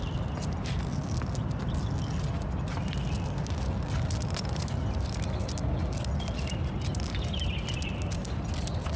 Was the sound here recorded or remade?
recorded